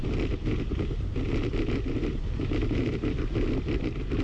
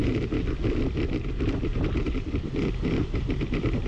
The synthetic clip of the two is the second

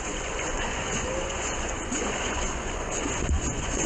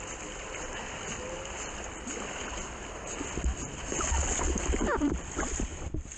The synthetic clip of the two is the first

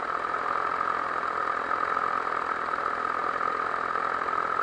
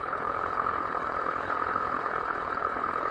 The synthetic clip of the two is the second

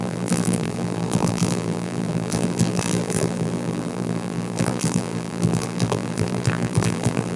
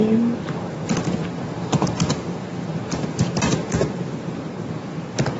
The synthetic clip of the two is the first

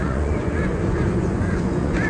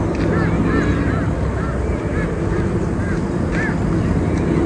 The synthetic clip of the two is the first